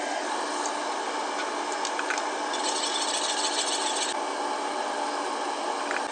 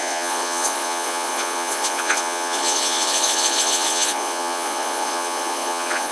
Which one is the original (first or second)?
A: first